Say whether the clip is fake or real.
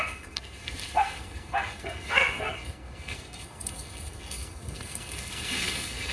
fake